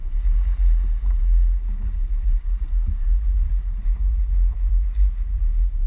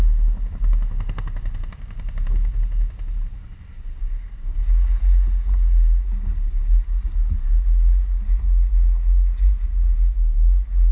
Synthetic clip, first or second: first